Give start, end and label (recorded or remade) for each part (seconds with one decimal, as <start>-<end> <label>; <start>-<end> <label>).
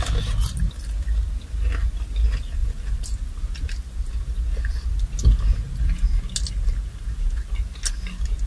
0.0-8.5 recorded